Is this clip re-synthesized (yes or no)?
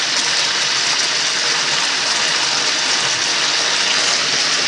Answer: no